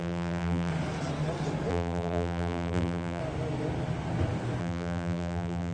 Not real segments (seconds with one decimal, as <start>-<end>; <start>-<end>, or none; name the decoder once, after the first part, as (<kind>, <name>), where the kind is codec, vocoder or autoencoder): 0.0-0.7 (vocoder, BigVGAN v2); 1.7-3.2; 4.6-5.7